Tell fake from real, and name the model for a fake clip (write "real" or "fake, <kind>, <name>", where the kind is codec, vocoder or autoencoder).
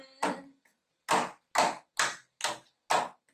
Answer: real